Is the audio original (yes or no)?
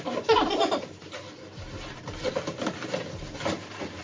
yes